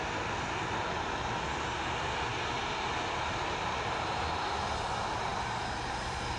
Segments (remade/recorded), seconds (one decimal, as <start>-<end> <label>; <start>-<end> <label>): 0.0-6.4 recorded